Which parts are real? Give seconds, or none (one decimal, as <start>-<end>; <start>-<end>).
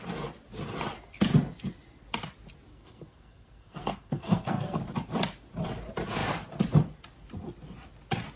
0.0-2.7; 4.8-8.4